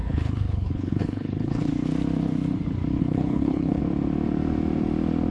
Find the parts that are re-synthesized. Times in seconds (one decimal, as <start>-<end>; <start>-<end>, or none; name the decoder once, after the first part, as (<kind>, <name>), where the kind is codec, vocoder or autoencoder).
0.0-1.7 (codec, HILCodec); 3.0-3.8